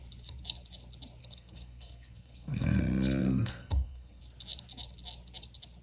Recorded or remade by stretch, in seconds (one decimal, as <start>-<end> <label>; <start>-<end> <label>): 0.0-1.2 recorded; 1.2-2.8 remade; 2.8-3.2 recorded; 3.2-4.2 remade; 4.2-5.8 recorded